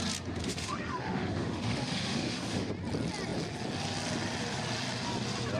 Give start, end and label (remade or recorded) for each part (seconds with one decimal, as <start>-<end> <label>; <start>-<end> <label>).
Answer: 0.0-0.4 recorded; 0.4-2.7 remade; 2.7-5.6 recorded